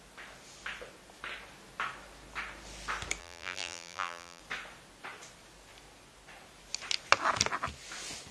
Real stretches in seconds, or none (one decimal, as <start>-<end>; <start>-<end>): 0.0-3.2; 4.4-8.3